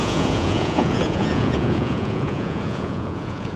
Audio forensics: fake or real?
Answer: fake